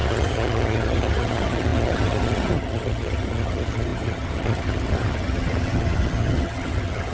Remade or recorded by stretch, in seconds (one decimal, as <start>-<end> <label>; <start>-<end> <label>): 0.0-7.1 remade